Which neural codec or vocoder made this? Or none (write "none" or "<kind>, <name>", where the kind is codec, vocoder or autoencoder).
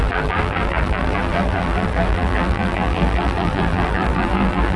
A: vocoder, BigVGAN v2